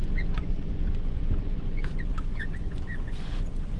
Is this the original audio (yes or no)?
no